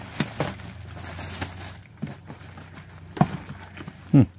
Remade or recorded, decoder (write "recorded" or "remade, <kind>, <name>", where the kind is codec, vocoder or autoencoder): recorded